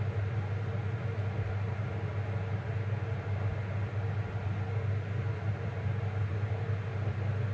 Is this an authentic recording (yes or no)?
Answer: yes